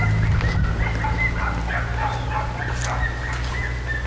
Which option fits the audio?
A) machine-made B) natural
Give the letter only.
B